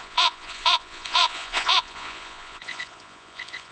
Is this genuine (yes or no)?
no